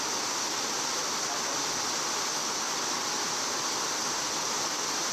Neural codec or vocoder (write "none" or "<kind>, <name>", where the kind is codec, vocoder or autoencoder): none